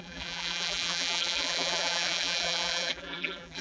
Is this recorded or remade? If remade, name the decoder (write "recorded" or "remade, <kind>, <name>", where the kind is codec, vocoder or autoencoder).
remade, vocoder, BigVGAN v2